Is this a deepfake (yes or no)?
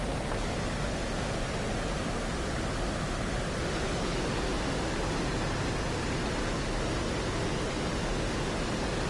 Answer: no